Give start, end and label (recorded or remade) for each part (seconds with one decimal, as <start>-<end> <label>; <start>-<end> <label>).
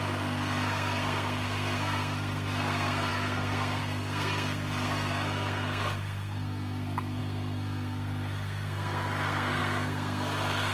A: 0.0-10.7 remade